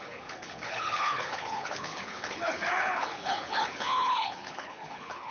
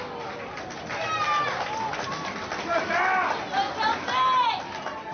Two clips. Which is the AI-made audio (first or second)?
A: first